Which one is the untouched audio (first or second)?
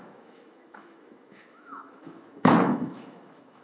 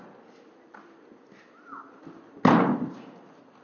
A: second